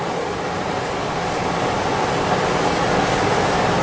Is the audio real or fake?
real